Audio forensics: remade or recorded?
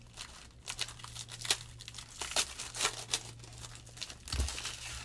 recorded